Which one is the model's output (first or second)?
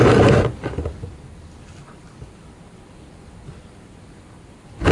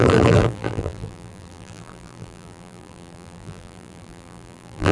second